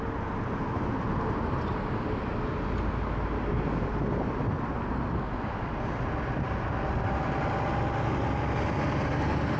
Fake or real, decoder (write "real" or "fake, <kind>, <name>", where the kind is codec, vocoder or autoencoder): real